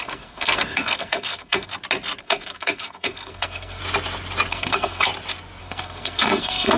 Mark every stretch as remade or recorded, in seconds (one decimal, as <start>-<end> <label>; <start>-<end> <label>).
0.0-1.7 remade; 1.7-2.2 recorded; 2.2-3.8 remade; 3.8-4.5 recorded; 4.5-5.1 remade; 5.1-5.6 recorded; 5.6-6.8 remade

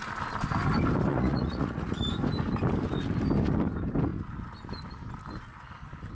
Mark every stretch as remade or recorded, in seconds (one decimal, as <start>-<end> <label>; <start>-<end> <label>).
0.0-1.1 recorded; 1.1-2.1 remade; 2.1-6.1 recorded

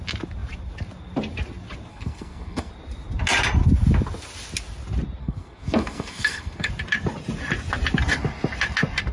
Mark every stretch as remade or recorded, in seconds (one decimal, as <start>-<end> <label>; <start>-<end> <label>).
0.0-1.9 recorded; 1.9-2.7 remade; 2.7-5.2 recorded; 5.2-6.7 remade; 6.7-9.1 recorded

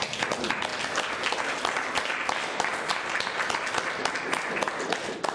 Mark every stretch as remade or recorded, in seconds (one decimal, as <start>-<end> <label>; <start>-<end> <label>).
0.0-5.3 recorded

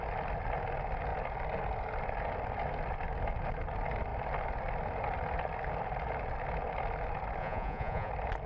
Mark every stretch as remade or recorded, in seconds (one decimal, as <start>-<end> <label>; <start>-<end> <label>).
0.0-7.4 recorded; 7.4-8.1 remade; 8.1-8.5 recorded

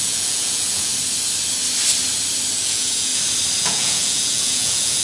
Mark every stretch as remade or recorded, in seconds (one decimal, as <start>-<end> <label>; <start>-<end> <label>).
0.0-0.9 remade; 0.9-2.6 recorded; 2.6-3.1 remade; 3.1-3.6 recorded; 3.6-5.0 remade

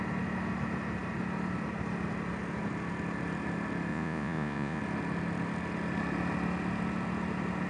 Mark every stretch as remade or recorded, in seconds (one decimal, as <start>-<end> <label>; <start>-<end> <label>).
0.0-3.9 recorded; 3.9-4.8 remade; 4.8-7.7 recorded